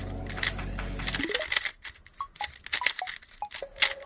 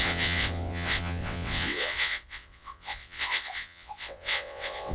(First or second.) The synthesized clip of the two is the second